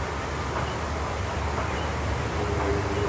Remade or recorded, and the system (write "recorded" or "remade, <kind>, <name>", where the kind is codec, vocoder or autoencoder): recorded